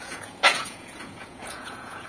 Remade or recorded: remade